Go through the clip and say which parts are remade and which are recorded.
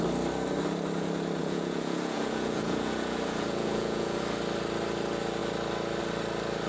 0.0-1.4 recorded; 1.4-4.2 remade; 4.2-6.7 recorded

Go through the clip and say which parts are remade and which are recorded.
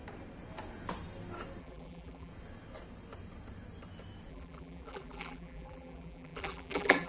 0.0-1.6 recorded; 1.6-2.3 remade; 2.3-4.3 recorded; 4.3-7.1 remade